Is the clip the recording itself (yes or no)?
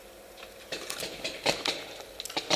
yes